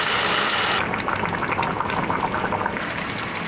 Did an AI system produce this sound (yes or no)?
no